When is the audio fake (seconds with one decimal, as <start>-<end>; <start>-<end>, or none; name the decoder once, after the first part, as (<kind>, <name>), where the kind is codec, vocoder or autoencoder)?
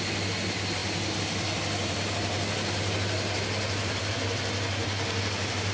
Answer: none